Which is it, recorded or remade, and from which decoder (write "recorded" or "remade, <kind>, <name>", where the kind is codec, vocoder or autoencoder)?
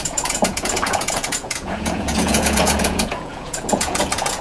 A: remade, vocoder, Vocos